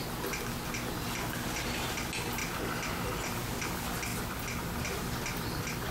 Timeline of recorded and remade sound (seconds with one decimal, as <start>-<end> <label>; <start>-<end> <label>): 0.0-4.1 recorded; 4.1-4.7 remade; 4.7-5.9 recorded